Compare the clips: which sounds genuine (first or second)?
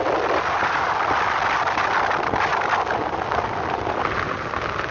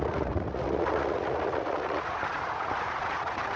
first